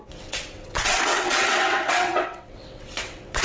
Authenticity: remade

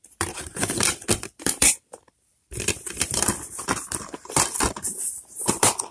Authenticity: remade